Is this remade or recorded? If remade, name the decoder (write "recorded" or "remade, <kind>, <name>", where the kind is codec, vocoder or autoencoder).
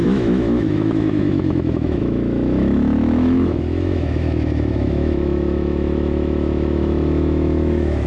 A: remade, autoencoder, DAC-VAE